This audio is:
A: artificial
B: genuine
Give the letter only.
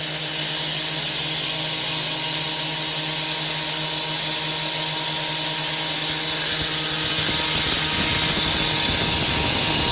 B